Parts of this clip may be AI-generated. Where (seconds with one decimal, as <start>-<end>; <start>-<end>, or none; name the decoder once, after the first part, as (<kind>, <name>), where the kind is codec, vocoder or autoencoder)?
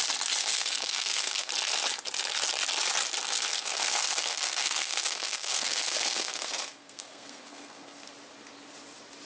0.4-1.5 (codec, SNAC); 3.2-8.1